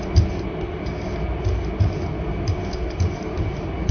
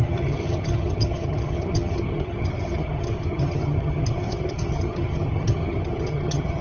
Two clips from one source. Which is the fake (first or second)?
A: second